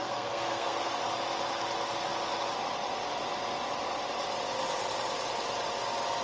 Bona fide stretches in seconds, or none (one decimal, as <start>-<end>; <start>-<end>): 1.0-6.2